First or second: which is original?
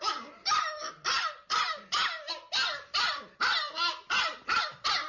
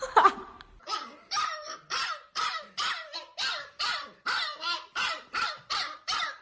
first